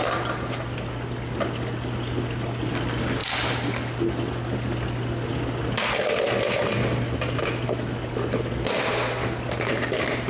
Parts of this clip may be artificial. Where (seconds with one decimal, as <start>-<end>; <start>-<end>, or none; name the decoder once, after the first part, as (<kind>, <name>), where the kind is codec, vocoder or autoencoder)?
none